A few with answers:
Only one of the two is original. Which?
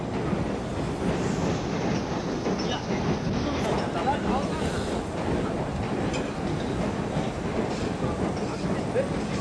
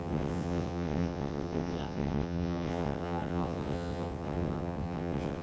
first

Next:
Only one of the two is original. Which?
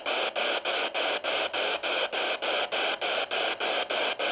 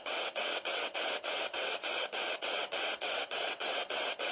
first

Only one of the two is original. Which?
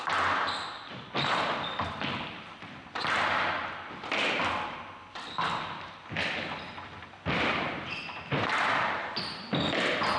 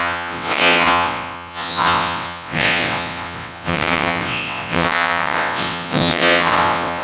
first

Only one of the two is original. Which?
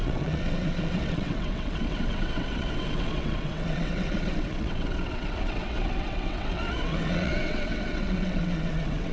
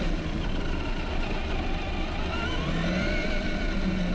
second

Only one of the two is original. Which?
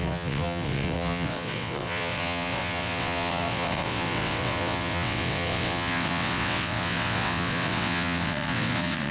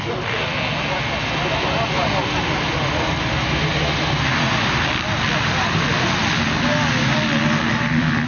second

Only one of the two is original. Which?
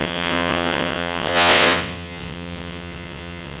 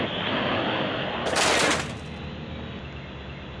second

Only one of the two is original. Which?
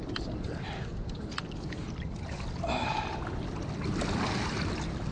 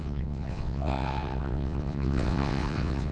first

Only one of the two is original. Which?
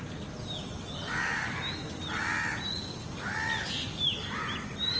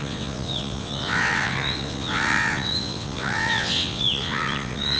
first